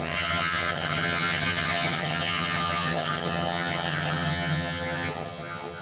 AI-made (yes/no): yes